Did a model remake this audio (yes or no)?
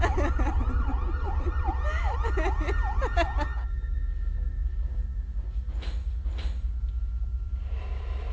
no